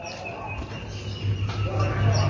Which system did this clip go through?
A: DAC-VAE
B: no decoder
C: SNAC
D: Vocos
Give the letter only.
B